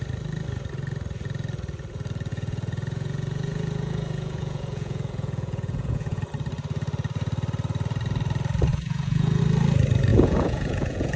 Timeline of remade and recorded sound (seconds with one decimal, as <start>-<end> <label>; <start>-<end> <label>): 0.0-2.3 recorded; 2.3-6.2 remade; 6.2-8.7 recorded; 8.7-9.4 remade; 9.4-10.1 recorded; 10.1-11.2 remade